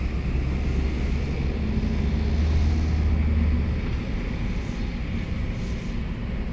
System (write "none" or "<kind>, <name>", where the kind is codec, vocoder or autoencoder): none